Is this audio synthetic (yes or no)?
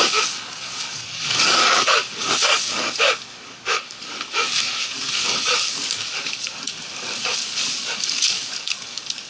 yes